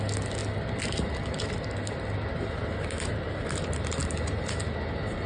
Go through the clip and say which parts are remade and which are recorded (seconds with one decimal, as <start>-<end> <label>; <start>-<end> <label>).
0.0-5.3 recorded